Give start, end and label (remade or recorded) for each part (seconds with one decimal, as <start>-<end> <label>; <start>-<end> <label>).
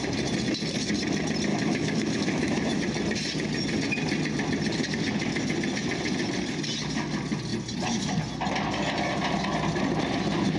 0.0-1.5 recorded; 1.5-2.8 remade; 2.8-10.6 recorded